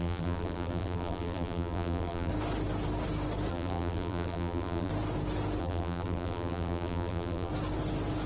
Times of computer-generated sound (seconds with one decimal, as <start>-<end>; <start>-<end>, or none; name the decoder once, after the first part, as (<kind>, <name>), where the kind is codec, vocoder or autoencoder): 0.0-2.3 (vocoder, BigVGAN v2); 3.5-4.9; 5.6-7.5